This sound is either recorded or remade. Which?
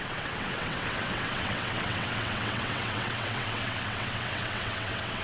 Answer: remade